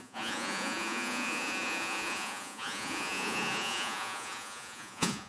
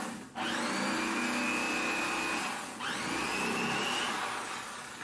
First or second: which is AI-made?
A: first